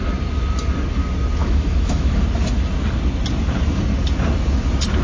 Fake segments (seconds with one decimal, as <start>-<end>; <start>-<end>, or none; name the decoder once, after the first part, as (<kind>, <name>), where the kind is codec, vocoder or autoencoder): 1.4-2.2 (autoencoder, DAC-VAE)